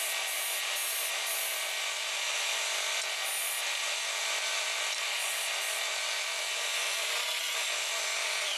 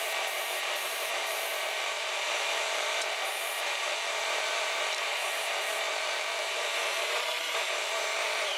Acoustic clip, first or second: first